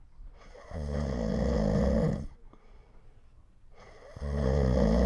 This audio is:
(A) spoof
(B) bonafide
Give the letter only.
B